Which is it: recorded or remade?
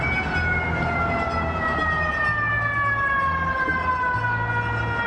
recorded